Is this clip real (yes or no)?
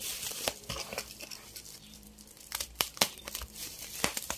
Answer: no